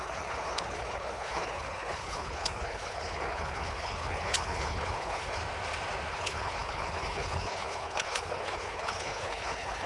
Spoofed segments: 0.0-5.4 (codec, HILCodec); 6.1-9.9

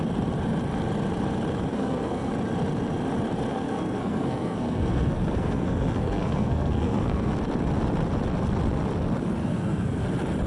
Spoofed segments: 1.7-2.3 (codec, SNAC); 3.5-7.3; 9.4-10.0

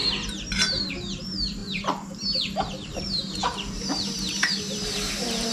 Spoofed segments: 0.0-5.5 (vocoder, BigVGAN v2)

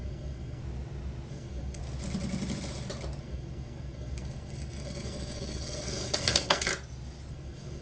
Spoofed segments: 0.0-0.6 (codec, SNAC); 1.3-1.8; 3.2-6.7; 7.3-7.8

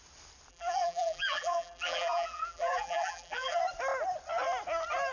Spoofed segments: 0.5-3.6 (vocoder, BigVGAN v2)

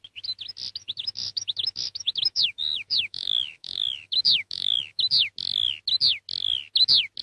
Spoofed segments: 0.8-5.1 (autoencoder, DAC-VAE)

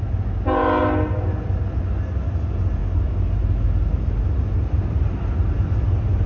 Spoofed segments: none